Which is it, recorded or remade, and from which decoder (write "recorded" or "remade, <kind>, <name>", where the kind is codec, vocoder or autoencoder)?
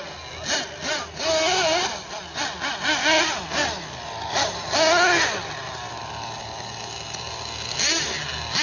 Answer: recorded